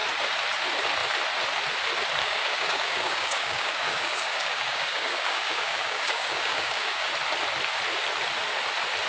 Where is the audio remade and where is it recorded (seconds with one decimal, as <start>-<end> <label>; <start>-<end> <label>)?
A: 0.0-2.2 recorded; 2.2-7.1 remade; 7.1-9.1 recorded